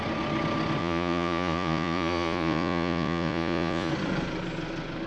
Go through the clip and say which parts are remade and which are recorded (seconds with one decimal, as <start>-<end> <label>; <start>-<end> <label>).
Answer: 0.0-0.8 recorded; 0.8-3.9 remade; 3.9-5.1 recorded